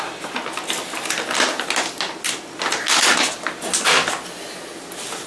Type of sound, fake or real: real